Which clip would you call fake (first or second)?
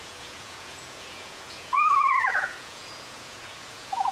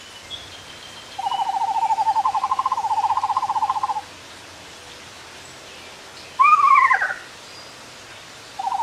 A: first